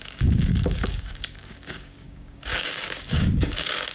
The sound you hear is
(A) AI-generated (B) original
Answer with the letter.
A